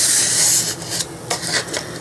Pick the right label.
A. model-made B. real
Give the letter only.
B